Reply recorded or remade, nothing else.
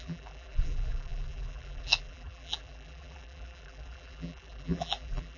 remade